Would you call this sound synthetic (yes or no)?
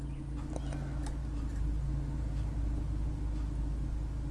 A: no